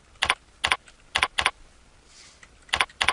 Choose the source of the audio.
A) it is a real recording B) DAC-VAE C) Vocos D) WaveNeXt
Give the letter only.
A